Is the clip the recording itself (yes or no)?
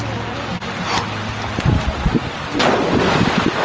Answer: yes